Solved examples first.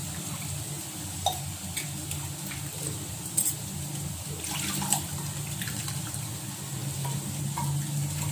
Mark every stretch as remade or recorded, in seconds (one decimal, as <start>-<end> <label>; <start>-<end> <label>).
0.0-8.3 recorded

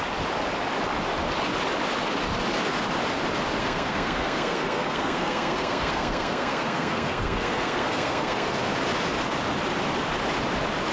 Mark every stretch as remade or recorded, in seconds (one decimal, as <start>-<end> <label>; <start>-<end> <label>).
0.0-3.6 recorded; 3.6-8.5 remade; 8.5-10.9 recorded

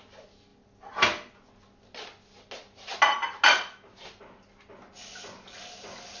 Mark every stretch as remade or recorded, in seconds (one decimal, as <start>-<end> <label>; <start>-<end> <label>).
0.0-6.2 recorded

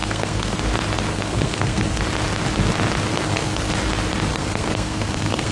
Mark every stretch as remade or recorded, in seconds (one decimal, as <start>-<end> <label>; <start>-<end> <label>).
0.0-0.6 remade; 0.6-1.1 recorded; 1.1-2.0 remade; 2.0-3.1 recorded; 3.1-3.7 remade; 3.7-4.3 recorded; 4.3-5.5 remade

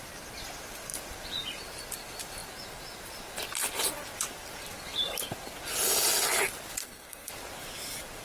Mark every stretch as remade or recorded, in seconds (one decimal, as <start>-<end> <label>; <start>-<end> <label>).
0.0-6.8 recorded; 6.8-7.3 remade; 7.3-8.2 recorded

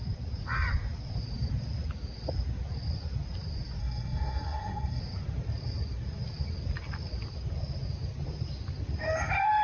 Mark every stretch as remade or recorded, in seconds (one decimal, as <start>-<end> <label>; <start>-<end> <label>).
0.0-3.8 recorded; 3.8-5.0 remade; 5.0-9.6 recorded

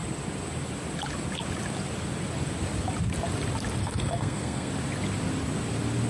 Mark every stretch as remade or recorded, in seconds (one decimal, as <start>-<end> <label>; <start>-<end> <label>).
0.0-3.8 recorded; 3.8-4.7 remade; 4.7-6.1 recorded